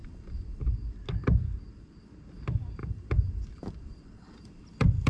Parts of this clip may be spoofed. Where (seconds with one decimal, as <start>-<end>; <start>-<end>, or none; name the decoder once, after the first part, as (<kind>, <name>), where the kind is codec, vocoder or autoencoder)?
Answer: 0.0-0.7 (vocoder, BigVGAN v2); 2.8-5.1